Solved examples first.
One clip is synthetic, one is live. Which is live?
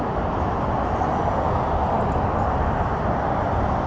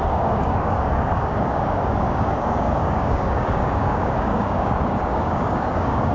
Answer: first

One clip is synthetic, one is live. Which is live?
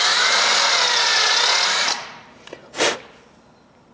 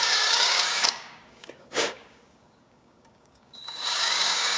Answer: first